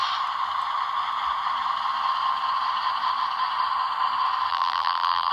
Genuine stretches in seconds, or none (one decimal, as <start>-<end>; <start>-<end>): 0.0-4.5